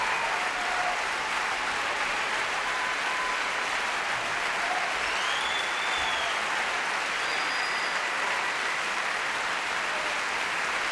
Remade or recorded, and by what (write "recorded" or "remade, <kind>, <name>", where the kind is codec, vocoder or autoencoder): remade, vocoder, BigVGAN v2